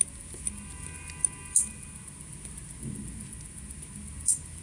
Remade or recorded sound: recorded